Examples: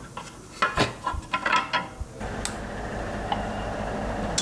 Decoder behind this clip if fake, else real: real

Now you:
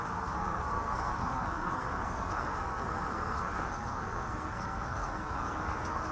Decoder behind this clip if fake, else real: fake, codec, SNAC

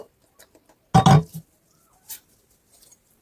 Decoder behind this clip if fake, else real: real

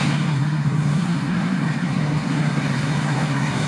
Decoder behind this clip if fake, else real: fake, codec, SNAC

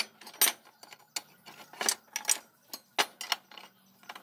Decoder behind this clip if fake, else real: real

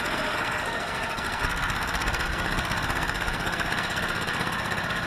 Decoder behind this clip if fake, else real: fake, codec, SNAC